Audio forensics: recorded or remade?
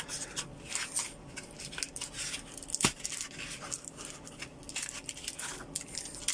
recorded